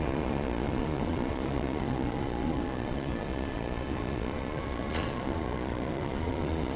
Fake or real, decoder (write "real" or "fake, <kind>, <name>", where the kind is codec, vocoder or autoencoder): fake, vocoder, Vocos